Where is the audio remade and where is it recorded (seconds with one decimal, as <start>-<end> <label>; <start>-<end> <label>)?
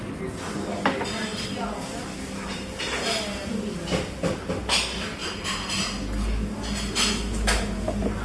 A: 0.0-8.2 recorded